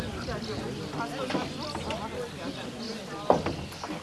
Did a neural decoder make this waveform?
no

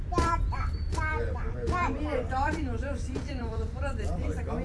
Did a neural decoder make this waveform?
yes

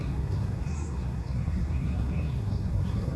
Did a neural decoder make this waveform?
yes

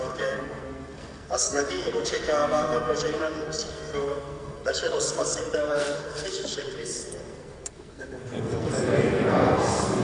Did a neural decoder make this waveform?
yes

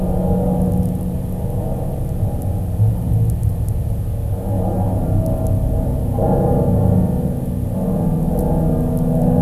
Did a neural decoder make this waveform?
no